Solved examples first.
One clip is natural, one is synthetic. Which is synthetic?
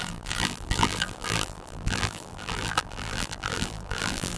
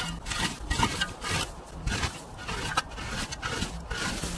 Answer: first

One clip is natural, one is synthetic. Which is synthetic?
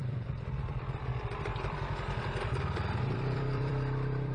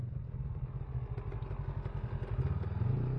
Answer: first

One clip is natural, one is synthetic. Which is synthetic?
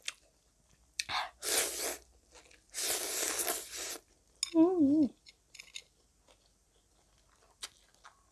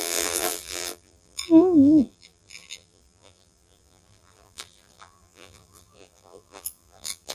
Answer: second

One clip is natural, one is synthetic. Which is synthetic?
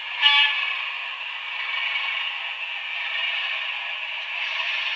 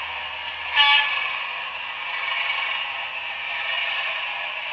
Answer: first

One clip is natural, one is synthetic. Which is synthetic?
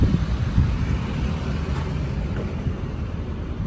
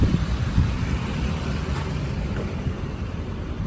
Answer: second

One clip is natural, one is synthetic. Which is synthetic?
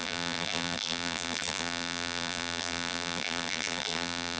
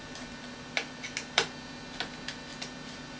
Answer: first